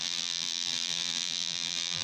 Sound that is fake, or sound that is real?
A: fake